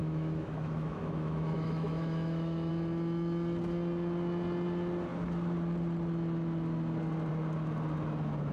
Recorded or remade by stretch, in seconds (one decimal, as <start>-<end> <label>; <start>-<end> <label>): 0.0-2.7 remade; 2.7-8.5 recorded